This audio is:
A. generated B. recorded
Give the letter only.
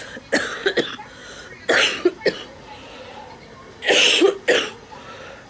B